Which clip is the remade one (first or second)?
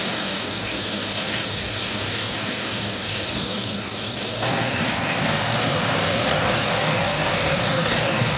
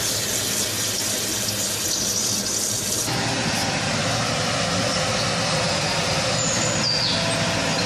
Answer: first